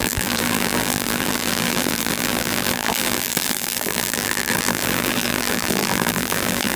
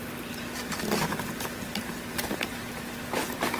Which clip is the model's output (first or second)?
first